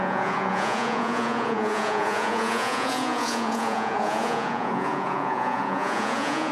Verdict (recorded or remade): remade